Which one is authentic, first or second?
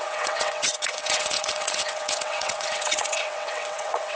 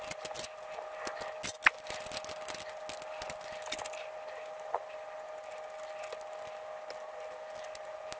second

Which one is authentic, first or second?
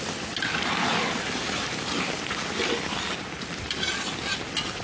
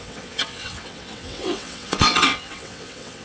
first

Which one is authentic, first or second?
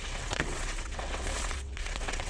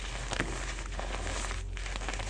second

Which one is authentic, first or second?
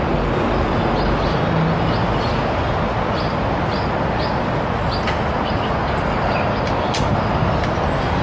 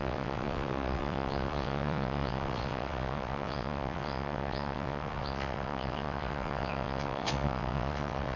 first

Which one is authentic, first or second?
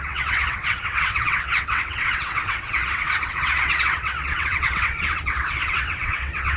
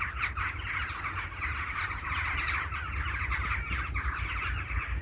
second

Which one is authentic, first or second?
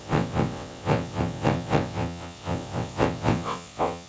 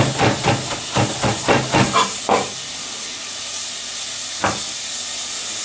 second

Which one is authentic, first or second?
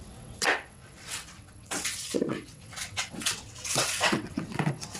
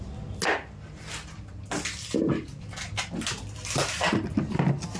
second